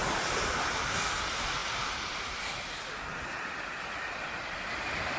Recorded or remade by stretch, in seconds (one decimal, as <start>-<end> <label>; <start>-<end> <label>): 0.0-5.2 recorded